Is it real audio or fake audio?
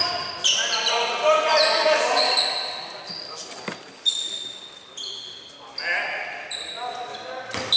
real